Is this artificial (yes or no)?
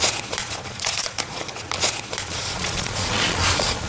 yes